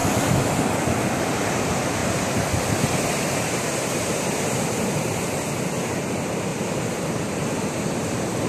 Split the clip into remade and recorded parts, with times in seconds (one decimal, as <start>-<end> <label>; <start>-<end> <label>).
0.0-1.2 recorded; 1.2-6.5 remade; 6.5-7.0 recorded; 7.0-8.5 remade